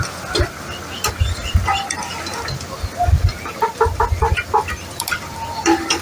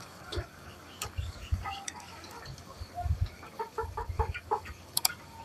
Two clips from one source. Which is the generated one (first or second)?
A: second